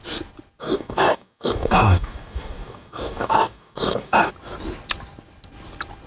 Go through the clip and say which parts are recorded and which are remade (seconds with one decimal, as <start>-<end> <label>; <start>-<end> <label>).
0.0-0.6 recorded; 0.6-4.3 remade; 4.3-6.1 recorded